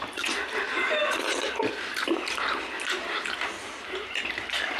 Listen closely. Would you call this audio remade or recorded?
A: recorded